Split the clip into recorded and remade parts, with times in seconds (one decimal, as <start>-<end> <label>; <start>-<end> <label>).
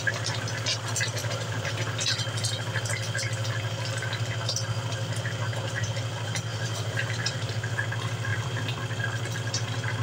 0.0-1.2 recorded; 1.2-1.9 remade; 1.9-6.5 recorded; 6.5-7.5 remade; 7.5-8.3 recorded; 8.3-8.8 remade; 8.8-10.0 recorded